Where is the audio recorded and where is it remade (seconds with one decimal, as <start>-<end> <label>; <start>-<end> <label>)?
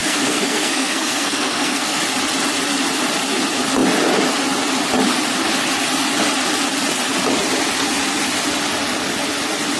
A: 0.0-2.0 remade; 2.0-9.8 recorded